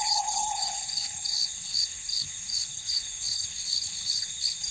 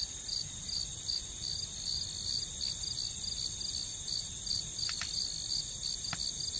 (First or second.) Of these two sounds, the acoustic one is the second